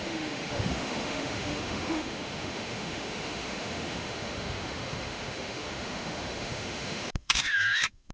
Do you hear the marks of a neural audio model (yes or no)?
yes